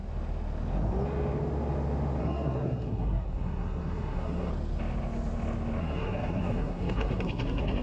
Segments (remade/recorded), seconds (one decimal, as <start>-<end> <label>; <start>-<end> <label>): 0.0-2.2 recorded; 2.2-4.5 remade; 4.5-5.8 recorded; 5.8-7.8 remade